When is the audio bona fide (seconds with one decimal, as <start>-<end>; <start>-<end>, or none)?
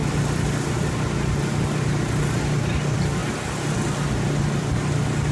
0.0-5.3